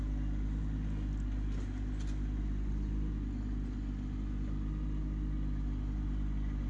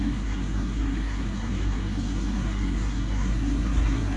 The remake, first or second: second